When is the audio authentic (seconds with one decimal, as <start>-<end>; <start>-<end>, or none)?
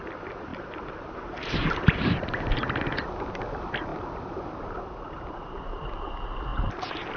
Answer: 0.0-0.5; 3.0-7.2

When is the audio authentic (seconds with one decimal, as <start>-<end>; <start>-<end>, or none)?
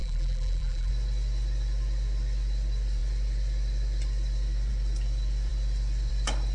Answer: 0.9-6.5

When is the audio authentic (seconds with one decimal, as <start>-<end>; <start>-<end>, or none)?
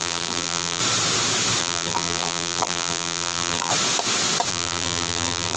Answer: 0.8-1.6; 3.7-4.5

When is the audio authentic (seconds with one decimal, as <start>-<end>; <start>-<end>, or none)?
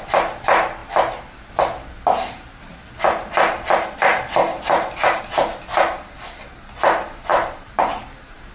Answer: 0.0-4.5; 5.2-7.3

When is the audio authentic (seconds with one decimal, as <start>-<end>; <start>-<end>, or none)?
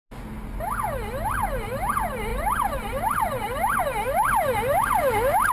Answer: 0.0-2.3; 3.8-5.5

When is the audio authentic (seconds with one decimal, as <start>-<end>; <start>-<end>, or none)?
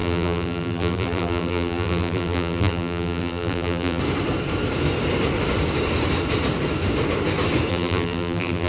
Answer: 4.0-7.7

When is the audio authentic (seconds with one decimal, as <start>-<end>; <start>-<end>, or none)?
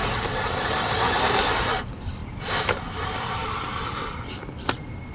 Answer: 0.7-2.2; 2.8-3.4; 3.9-5.1